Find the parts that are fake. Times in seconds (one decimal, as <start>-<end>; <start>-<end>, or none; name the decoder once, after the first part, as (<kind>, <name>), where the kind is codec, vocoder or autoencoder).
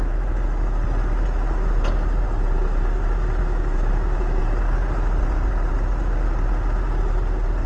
3.4-4.4 (autoencoder, DAC-VAE)